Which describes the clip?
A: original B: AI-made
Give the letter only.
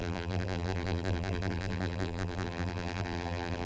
B